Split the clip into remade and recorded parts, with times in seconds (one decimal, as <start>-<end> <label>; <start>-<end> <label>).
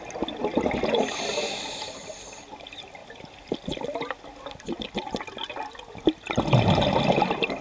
0.0-7.6 recorded